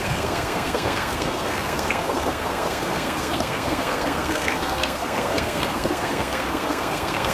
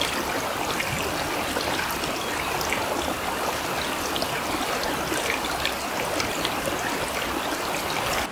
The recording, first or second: second